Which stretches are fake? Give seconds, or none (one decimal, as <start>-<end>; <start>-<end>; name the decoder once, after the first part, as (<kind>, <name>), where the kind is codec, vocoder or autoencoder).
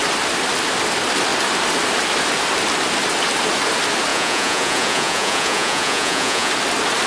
4.1-6.5 (vocoder, Vocos)